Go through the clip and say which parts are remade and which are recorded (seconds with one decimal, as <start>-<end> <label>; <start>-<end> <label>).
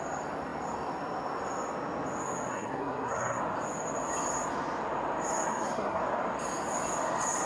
0.0-2.5 recorded; 2.5-3.4 remade; 3.4-5.5 recorded; 5.5-6.0 remade; 6.0-7.5 recorded